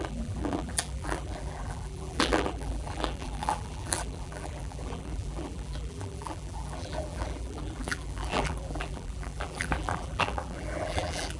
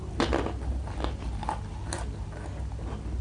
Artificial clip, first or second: first